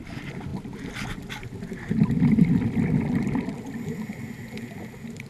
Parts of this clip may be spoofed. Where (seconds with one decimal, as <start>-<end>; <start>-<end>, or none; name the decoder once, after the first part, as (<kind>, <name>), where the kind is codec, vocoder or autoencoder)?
none